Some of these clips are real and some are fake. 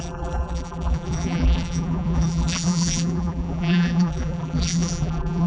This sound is fake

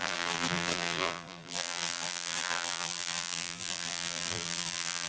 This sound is fake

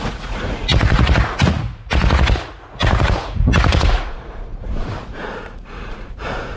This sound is fake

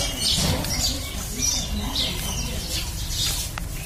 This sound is real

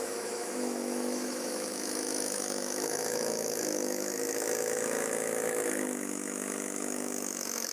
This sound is fake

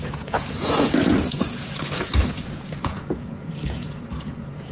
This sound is fake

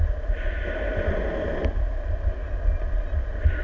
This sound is real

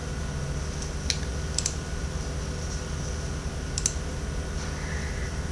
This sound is real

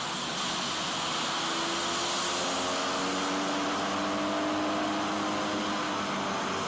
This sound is real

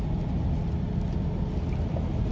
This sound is real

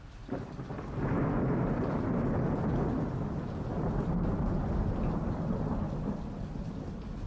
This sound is real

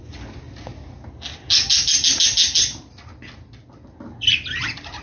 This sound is real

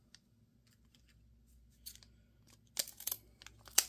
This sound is real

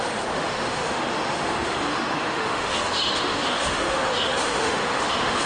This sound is fake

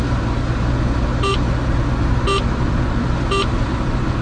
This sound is real